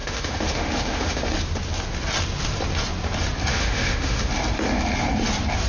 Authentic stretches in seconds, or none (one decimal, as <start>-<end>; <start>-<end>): 1.3-3.5; 4.3-5.7